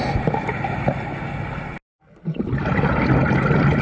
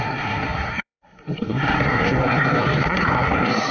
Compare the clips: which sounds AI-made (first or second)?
second